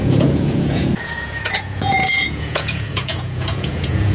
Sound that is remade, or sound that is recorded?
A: remade